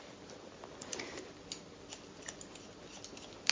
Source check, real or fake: real